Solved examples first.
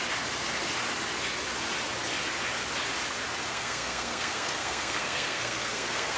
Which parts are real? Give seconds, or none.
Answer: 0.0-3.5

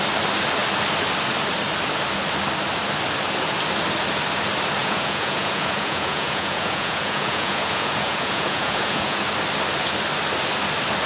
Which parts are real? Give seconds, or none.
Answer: 0.0-4.8; 9.2-11.1